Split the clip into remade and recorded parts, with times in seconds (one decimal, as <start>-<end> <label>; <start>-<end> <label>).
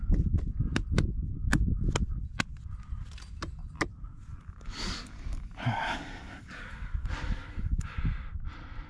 0.0-4.3 recorded; 4.3-8.0 remade; 8.0-8.9 recorded